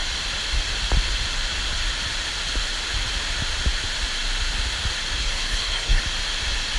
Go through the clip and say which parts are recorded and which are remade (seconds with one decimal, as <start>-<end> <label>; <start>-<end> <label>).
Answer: 0.0-5.2 recorded; 5.2-6.0 remade; 6.0-6.8 recorded